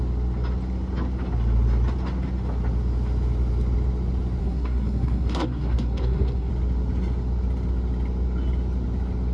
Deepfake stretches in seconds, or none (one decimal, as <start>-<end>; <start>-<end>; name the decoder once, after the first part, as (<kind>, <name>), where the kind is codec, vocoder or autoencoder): 4.4-6.5 (codec, SNAC)